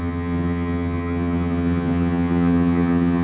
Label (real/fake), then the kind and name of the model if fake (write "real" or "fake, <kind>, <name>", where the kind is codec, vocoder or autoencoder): fake, vocoder, HiFi-GAN